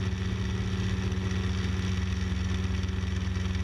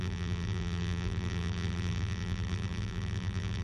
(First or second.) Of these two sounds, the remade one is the second